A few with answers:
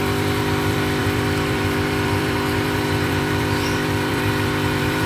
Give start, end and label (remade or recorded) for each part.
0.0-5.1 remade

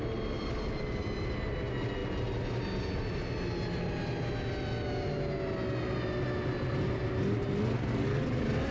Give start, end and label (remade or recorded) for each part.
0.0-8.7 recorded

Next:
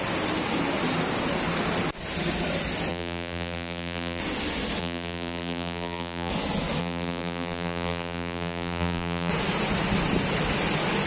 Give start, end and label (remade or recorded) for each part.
0.0-2.9 recorded; 2.9-4.2 remade; 4.2-4.8 recorded; 4.8-6.3 remade; 6.3-6.8 recorded; 6.8-9.3 remade; 9.3-11.1 recorded